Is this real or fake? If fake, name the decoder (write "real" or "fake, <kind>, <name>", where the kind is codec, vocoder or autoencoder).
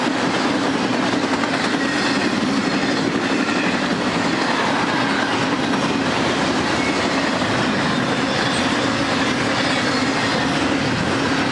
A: real